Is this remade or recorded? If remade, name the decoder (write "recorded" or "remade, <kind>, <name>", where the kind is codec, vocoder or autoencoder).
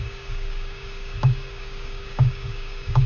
remade, codec, DAC